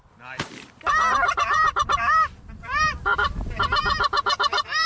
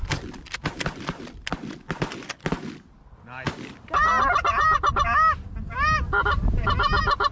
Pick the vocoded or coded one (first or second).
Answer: first